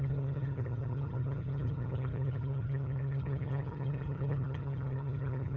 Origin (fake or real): fake